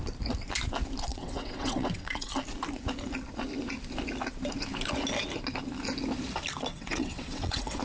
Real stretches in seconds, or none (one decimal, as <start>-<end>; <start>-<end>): 0.0-1.1; 2.3-6.7